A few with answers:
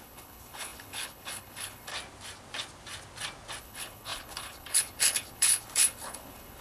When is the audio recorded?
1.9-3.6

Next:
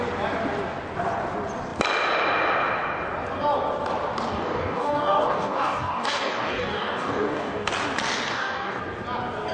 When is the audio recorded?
0.0-4.3; 7.7-8.3; 8.8-9.5